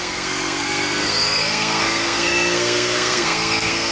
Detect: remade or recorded remade